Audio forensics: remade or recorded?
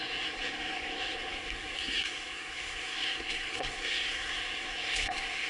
remade